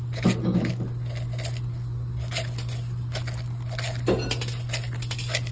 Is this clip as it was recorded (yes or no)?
yes